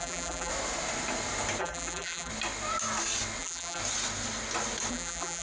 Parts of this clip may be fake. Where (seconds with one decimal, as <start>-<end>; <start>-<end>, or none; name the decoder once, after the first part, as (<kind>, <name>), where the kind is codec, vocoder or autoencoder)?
0.0-0.5 (vocoder, BigVGAN v2); 1.6-2.3; 3.4-3.8; 4.9-5.4